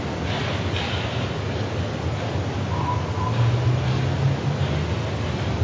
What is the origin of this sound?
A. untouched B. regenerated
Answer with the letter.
A